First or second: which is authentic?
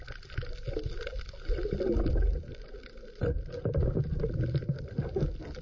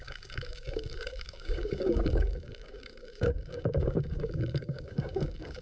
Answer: first